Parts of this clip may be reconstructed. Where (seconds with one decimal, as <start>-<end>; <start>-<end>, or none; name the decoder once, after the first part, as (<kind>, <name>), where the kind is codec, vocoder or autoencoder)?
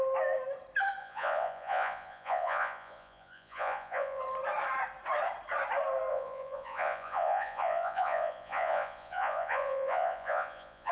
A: 1.0-4.2 (vocoder, Vocos); 6.1-10.9